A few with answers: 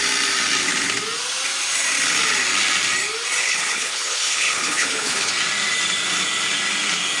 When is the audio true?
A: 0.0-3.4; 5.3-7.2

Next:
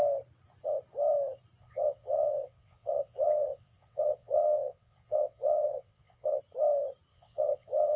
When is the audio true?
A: 0.0-1.6; 6.4-7.1

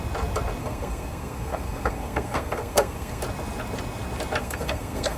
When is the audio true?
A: 0.0-0.6; 3.2-4.4

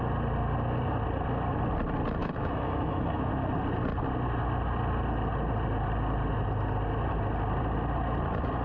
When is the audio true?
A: 0.0-2.2; 3.3-8.6

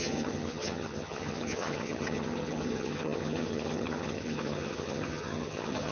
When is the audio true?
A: none